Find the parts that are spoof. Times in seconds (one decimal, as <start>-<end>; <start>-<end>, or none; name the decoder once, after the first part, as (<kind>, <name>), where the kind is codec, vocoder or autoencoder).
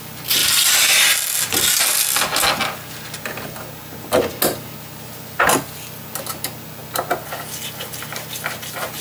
none